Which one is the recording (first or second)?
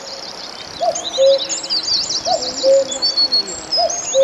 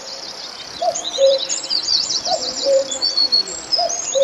first